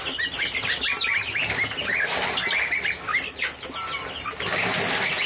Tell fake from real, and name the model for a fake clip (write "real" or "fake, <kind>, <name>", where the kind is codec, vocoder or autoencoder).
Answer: real